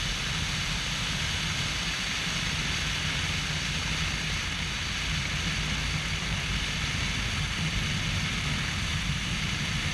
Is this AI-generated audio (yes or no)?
no